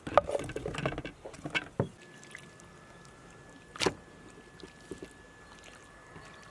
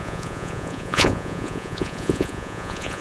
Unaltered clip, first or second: first